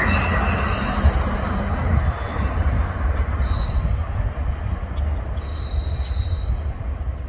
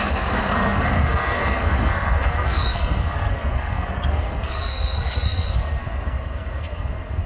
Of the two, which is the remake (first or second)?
second